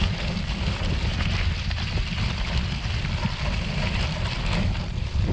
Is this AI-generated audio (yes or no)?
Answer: no